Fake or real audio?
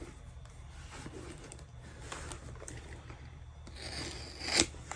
real